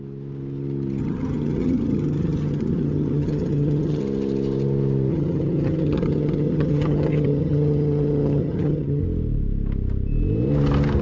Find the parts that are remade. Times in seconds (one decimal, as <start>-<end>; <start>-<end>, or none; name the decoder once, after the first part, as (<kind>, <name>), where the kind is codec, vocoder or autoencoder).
1.0-4.0 (vocoder, HiFi-GAN); 5.1-9.0